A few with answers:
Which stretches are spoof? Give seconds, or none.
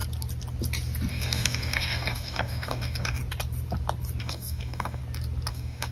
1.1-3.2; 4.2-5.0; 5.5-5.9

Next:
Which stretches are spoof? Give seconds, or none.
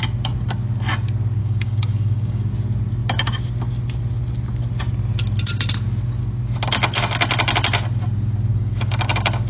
1.4-2.5; 8.5-9.1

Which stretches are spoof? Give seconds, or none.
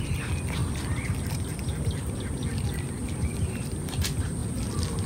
none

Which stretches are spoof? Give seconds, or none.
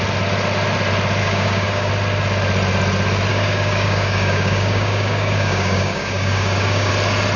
1.2-1.9; 3.3-6.9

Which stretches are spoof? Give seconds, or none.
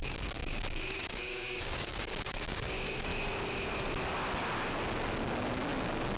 0.0-3.1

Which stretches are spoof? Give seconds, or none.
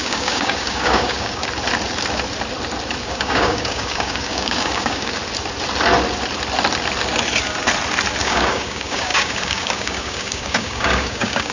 0.0-1.4; 3.0-5.2; 8.2-11.5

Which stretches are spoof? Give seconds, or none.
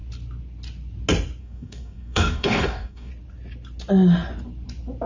1.4-3.1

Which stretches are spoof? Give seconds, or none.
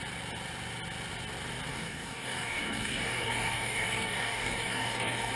1.7-5.3